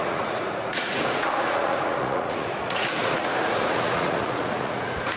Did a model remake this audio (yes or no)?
yes